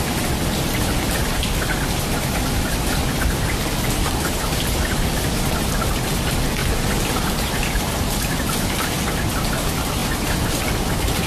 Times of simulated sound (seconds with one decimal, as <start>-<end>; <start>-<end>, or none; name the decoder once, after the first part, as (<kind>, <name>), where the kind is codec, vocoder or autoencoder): none